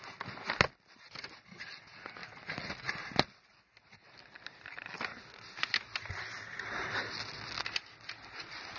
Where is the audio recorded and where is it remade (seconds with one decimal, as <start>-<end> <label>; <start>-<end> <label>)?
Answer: 0.0-2.2 recorded; 2.2-2.9 remade; 2.9-8.8 recorded